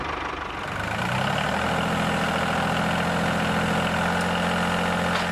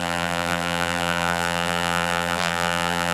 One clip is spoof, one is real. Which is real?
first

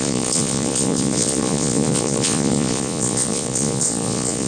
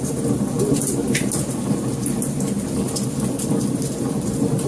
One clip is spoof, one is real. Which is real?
second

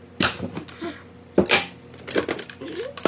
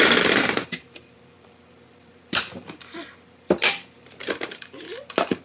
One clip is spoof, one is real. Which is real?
first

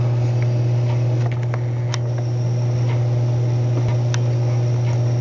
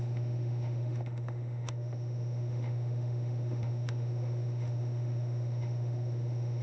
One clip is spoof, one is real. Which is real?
first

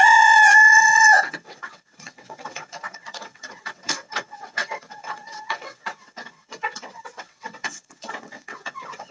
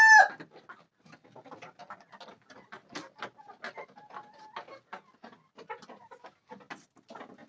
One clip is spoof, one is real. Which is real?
second